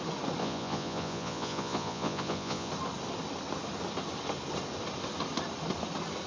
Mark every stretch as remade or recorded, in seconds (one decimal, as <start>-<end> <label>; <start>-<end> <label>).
0.0-0.4 recorded; 0.4-2.7 remade; 2.7-6.3 recorded